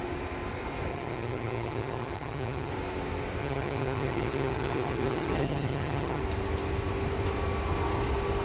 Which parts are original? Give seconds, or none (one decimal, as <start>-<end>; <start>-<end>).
0.0-0.9; 2.7-3.4; 6.2-8.4